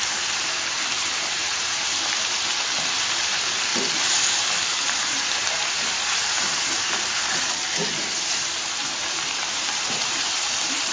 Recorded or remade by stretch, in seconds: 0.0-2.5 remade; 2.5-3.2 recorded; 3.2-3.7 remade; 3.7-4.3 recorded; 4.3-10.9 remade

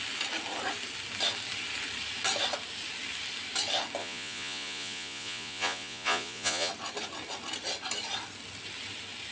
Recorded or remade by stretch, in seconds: 0.0-4.0 recorded; 4.0-6.7 remade; 6.7-9.3 recorded